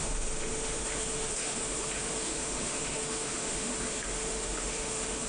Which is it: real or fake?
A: fake